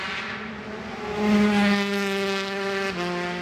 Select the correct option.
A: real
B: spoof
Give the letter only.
A